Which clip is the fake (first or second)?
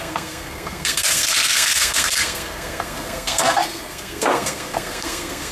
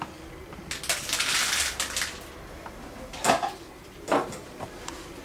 first